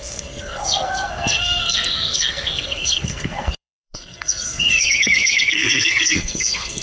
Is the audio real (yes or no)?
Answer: no